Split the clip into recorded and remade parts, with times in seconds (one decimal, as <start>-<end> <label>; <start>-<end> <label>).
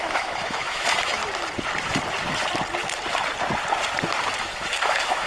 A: 0.0-1.2 remade; 1.2-4.4 recorded; 4.4-5.3 remade